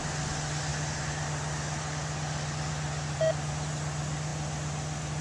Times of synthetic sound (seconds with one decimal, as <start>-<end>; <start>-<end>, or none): none